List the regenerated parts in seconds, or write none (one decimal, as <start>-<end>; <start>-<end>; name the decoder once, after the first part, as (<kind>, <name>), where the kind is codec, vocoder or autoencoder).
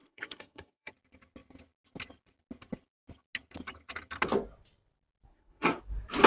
0.0-0.9 (codec, SNAC); 5.3-5.8